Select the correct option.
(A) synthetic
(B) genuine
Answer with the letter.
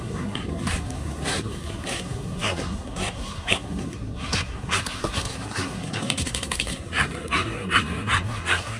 A